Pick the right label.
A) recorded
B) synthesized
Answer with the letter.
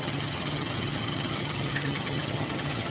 B